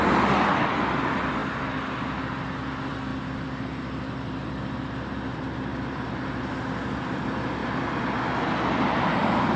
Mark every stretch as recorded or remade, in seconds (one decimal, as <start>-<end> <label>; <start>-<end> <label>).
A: 0.0-9.6 recorded